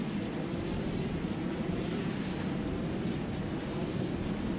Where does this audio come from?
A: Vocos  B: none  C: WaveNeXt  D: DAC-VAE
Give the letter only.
B